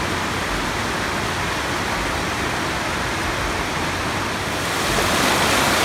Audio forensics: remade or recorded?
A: recorded